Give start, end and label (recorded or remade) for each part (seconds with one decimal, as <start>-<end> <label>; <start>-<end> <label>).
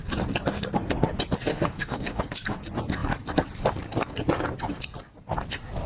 0.0-1.5 recorded; 1.5-2.2 remade; 2.2-5.9 recorded